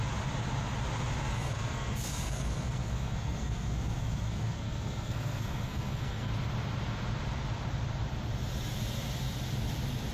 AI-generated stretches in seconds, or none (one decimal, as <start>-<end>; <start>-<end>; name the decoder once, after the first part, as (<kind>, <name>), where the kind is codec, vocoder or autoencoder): 1.2-6.3 (codec, SNAC)